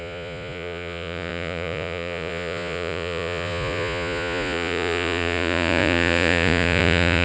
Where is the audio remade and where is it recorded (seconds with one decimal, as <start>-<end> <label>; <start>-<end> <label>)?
0.0-7.2 remade